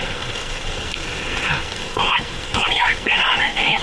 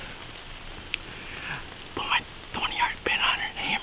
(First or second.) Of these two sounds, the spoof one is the first